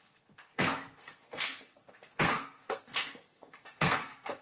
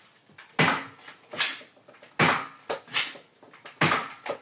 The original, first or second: second